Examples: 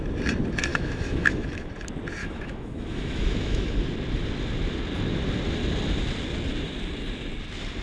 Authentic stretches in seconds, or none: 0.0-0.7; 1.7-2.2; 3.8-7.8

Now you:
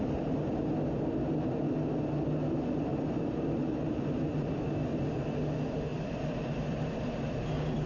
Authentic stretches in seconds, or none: 0.0-2.9; 4.5-5.9; 7.4-7.9

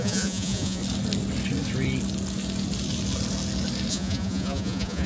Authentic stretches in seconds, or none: 0.8-3.9

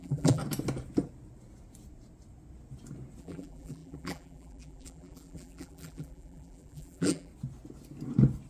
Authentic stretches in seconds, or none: 0.4-3.2; 7.3-8.5

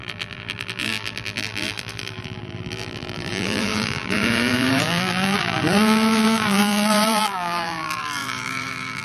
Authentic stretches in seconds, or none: none

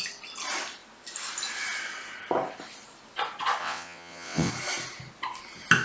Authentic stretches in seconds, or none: 0.0-3.6; 4.5-5.8

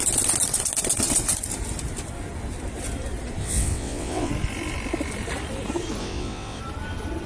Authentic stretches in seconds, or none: 0.0-3.4; 4.3-6.0; 6.6-7.3

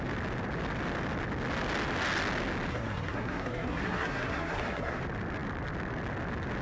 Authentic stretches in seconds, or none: 0.0-2.7; 5.0-6.6